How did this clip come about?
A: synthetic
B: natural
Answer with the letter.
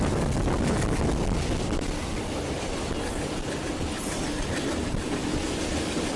B